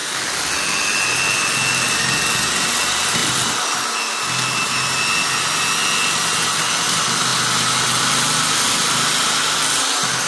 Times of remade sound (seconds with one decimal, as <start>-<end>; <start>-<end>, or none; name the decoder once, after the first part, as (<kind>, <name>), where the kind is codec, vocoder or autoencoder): 0.0-0.5 (codec, DAC)